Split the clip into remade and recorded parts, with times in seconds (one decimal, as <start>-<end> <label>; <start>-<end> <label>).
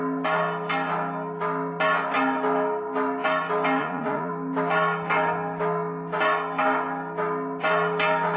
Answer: 0.0-3.8 recorded; 3.8-4.3 remade; 4.3-8.4 recorded